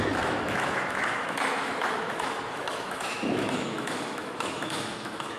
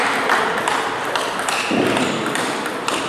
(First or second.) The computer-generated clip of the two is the first